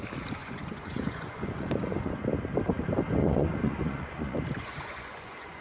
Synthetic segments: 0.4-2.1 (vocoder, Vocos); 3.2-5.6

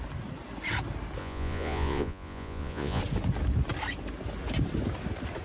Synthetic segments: 1.2-3.0 (vocoder, Vocos)

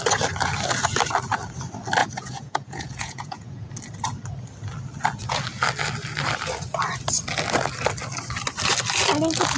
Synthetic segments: 2.0-3.7 (vocoder, Vocos)

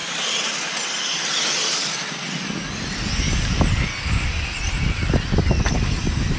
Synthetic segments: none

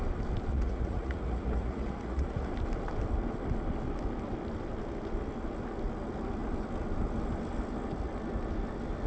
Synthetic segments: 0.5-2.5 (vocoder, Vocos)

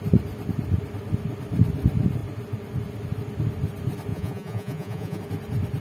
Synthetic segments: 4.1-5.2 (vocoder, Vocos)

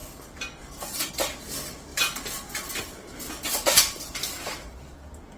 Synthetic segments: none